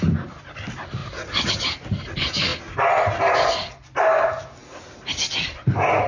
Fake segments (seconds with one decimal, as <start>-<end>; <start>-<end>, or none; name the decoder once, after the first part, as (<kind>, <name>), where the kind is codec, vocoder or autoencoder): none